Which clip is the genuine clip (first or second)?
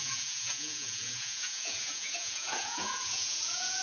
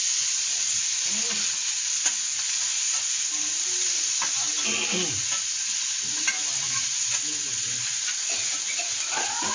second